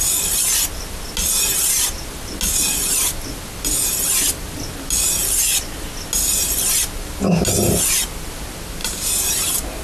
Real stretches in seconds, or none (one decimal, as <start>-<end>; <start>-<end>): 0.0-8.8